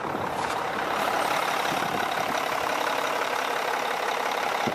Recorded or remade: remade